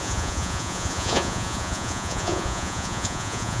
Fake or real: fake